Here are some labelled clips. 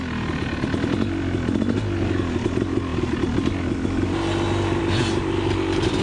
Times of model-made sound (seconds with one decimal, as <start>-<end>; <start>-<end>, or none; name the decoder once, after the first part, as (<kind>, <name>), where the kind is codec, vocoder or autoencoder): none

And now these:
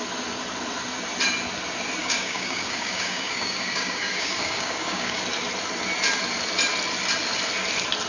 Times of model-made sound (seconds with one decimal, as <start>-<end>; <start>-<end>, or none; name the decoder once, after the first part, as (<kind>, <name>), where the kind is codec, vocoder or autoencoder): 2.0-5.2 (codec, DAC)

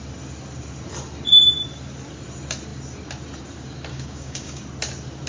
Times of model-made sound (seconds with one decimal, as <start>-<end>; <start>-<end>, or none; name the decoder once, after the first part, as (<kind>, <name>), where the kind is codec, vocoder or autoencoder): 3.9-4.6 (codec, DAC)

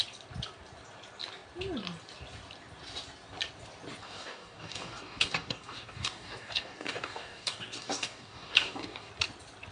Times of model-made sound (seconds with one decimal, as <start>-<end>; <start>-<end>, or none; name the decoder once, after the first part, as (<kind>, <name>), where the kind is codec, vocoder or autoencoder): 4.0-9.1 (codec, DAC)

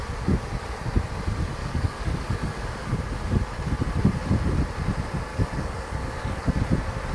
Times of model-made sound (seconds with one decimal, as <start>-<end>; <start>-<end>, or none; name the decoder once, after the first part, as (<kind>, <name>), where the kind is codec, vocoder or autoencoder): 1.6-2.9 (codec, DAC); 5.3-6.5